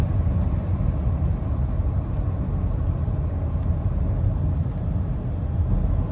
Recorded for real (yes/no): yes